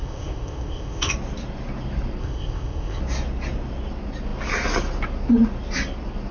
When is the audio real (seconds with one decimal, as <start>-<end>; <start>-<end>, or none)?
1.1-2.2; 3.0-6.3